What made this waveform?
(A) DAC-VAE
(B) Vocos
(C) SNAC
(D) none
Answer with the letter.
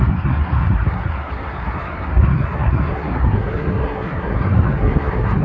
C